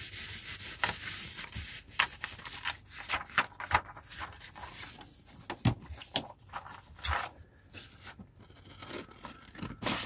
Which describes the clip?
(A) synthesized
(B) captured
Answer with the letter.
B